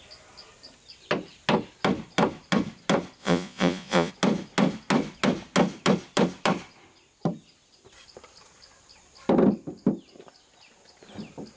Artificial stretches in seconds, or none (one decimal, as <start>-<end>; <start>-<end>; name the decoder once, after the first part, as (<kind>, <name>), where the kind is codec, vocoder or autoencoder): 3.2-4.1 (vocoder, Vocos)